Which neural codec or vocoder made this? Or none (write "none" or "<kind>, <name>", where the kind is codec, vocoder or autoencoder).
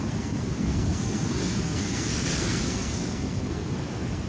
codec, SNAC